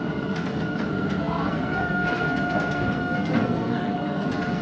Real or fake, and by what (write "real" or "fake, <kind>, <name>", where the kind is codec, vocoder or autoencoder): fake, codec, SNAC